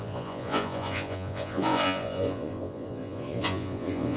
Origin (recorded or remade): remade